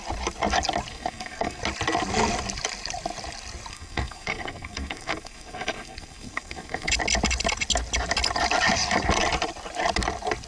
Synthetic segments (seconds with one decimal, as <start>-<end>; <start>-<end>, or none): 0.9-1.6; 3.7-6.9